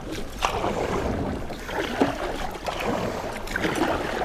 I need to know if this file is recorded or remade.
recorded